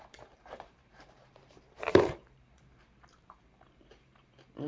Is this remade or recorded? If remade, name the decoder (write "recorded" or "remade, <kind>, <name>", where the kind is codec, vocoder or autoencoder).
remade, vocoder, BigVGAN v2